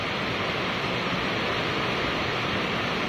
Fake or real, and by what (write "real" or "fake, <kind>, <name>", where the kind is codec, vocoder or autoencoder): real